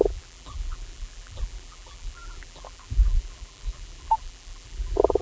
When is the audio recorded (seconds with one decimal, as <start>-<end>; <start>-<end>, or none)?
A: none